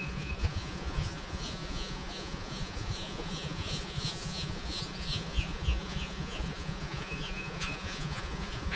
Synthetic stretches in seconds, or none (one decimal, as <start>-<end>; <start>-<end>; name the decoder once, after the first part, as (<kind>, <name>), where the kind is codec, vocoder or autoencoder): 0.0-8.8 (vocoder, Vocos)